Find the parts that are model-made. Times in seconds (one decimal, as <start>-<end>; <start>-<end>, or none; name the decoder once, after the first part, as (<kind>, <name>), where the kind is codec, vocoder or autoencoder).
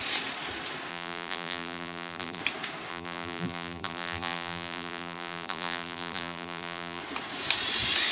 0.9-2.4 (vocoder, BigVGAN v2); 2.9-7.0